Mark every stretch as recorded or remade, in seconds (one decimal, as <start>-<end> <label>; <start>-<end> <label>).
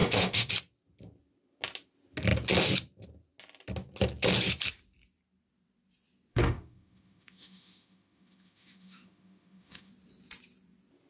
0.0-0.5 remade; 0.5-6.3 recorded; 6.3-9.9 remade; 9.9-11.1 recorded